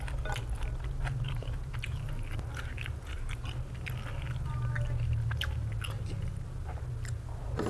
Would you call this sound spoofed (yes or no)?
no